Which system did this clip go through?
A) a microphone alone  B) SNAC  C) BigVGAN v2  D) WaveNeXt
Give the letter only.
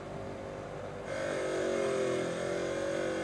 A